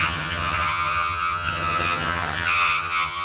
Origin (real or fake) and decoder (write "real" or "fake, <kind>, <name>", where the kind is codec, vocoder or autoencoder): fake, vocoder, HiFi-GAN